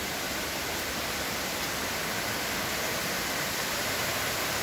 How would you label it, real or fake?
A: real